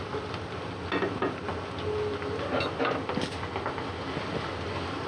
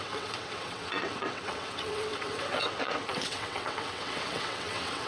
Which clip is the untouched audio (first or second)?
first